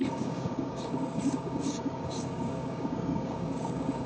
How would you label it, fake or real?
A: fake